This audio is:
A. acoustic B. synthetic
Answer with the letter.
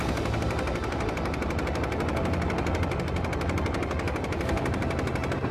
A